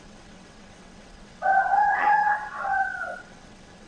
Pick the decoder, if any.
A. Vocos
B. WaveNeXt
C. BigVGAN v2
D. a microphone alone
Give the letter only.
B